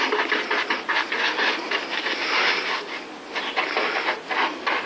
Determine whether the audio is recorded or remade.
recorded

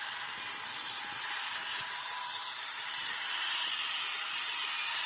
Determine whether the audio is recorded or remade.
recorded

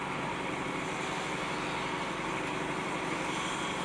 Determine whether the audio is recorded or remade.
recorded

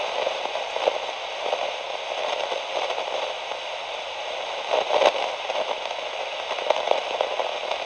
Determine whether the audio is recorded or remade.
recorded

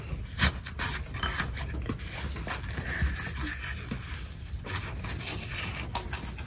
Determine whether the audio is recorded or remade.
recorded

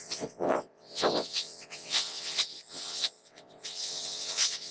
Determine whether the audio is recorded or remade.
remade